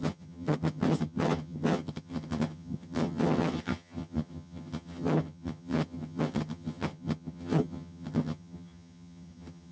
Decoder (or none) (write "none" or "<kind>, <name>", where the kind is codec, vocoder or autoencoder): vocoder, HiFi-GAN